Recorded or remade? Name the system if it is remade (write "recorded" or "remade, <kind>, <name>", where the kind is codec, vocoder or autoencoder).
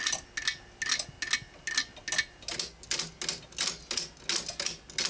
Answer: recorded